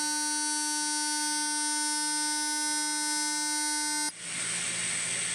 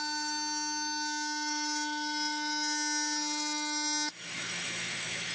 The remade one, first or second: second